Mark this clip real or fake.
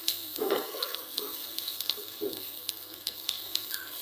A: fake